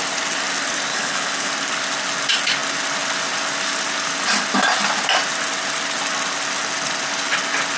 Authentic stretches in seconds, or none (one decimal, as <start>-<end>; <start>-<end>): 0.0-0.9; 1.5-7.8